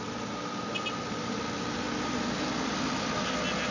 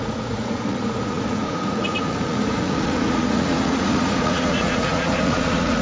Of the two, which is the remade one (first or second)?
second